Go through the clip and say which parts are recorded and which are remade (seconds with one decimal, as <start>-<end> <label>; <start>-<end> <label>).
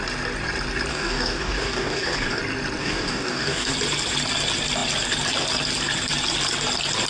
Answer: 0.0-0.9 recorded; 0.9-2.4 remade; 2.4-2.8 recorded; 2.8-3.7 remade; 3.7-7.1 recorded